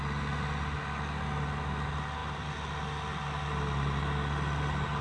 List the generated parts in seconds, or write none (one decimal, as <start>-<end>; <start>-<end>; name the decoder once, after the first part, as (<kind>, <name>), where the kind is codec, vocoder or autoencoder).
none